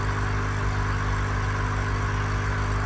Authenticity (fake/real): real